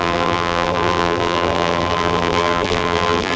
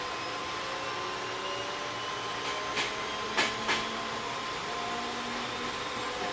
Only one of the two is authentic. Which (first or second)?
second